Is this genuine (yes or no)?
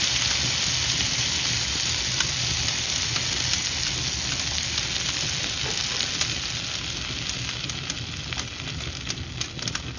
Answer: yes